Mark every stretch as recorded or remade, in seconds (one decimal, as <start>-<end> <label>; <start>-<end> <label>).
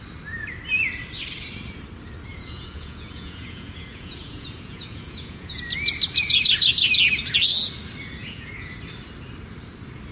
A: 0.0-2.3 recorded; 2.3-5.6 remade; 5.6-8.2 recorded; 8.2-8.8 remade; 8.8-10.1 recorded